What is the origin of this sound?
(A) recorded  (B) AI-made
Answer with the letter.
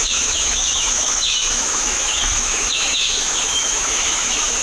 B